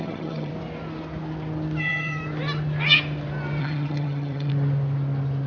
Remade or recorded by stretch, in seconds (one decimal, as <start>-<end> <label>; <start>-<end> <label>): 0.0-0.5 remade; 0.5-1.8 recorded; 1.8-2.2 remade; 2.2-3.6 recorded; 3.6-4.5 remade; 4.5-5.5 recorded